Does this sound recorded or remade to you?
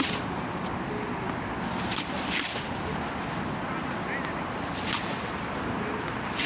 recorded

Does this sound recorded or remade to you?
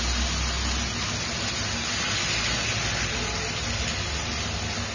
recorded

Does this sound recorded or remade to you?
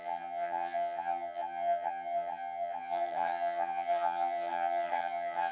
remade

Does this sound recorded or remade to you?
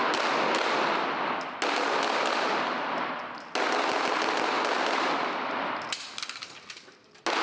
recorded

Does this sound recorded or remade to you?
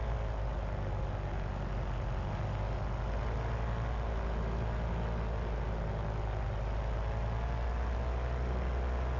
recorded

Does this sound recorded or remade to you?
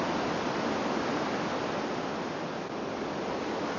recorded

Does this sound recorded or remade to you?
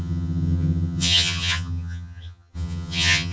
remade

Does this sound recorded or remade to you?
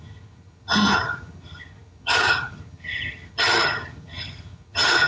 remade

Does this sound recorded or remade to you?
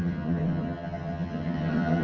remade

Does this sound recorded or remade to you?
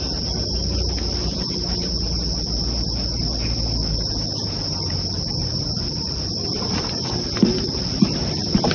recorded